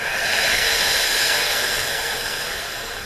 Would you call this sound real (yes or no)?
no